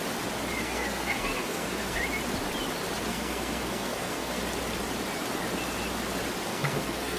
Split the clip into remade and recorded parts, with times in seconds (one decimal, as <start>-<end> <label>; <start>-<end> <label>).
0.0-0.6 recorded; 0.6-2.0 remade; 2.0-3.1 recorded; 3.1-4.4 remade; 4.4-6.5 recorded; 6.5-7.2 remade